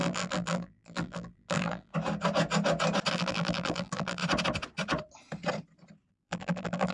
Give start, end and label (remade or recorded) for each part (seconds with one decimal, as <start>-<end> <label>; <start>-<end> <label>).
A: 0.0-1.9 remade; 1.9-3.1 recorded; 3.1-4.2 remade; 4.2-6.1 recorded; 6.1-6.9 remade